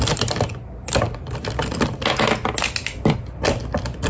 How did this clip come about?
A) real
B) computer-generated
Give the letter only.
A